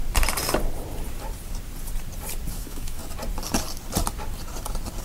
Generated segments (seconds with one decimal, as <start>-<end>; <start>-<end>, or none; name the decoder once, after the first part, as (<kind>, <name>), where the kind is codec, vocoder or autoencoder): 2.5-3.0 (autoencoder, DAC-VAE)